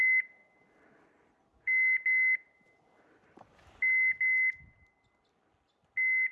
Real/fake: real